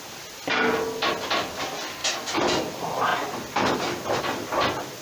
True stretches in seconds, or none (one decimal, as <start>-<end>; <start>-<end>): 0.0-5.0